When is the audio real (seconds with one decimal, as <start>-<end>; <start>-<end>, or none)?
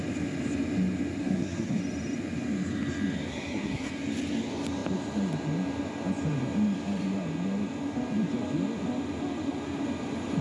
0.0-1.2; 1.8-3.3; 3.9-10.4